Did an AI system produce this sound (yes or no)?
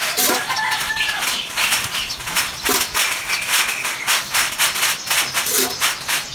no